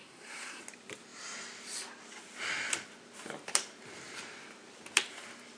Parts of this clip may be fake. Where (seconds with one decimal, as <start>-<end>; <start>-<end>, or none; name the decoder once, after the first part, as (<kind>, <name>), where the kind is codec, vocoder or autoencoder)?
0.0-0.6 (codec, SNAC)